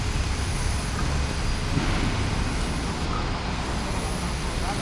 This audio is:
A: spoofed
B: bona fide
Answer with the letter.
B